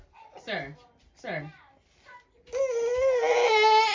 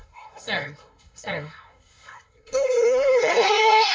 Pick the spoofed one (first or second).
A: second